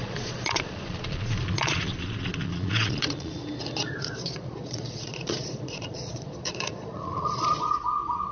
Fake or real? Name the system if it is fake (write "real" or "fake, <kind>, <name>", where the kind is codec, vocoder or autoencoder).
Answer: fake, vocoder, Vocos